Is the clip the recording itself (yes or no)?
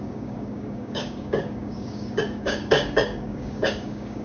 no